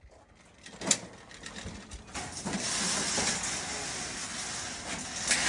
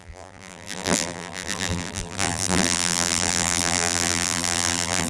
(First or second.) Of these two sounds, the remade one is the second